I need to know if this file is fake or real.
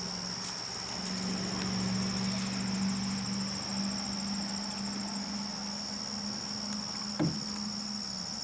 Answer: real